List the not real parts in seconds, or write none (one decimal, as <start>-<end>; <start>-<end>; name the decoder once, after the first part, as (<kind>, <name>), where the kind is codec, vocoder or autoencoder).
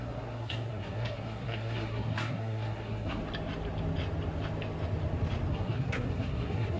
0.0-3.2 (codec, SNAC); 5.5-6.8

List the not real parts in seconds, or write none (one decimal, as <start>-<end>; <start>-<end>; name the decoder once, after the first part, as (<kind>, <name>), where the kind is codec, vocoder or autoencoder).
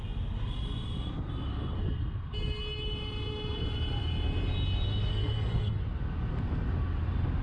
5.1-5.8 (codec, SNAC)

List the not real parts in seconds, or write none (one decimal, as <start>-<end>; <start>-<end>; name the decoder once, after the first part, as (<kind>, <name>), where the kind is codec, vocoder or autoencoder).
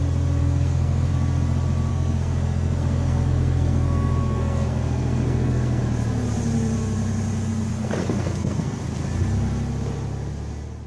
0.4-1.1 (codec, SNAC); 1.9-5.8; 7.7-8.8